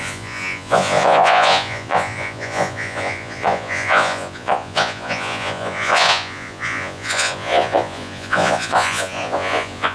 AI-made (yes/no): yes